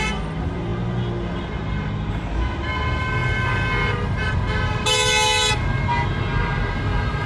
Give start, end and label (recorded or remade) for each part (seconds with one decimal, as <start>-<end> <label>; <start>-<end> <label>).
0.0-7.3 recorded